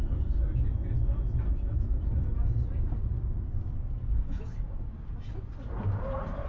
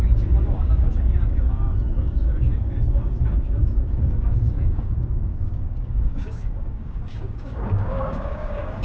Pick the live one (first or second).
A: first